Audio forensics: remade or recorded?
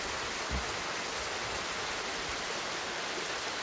recorded